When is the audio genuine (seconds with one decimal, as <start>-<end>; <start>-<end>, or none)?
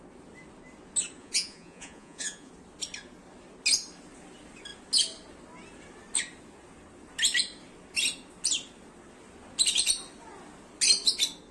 0.0-1.2; 2.5-11.5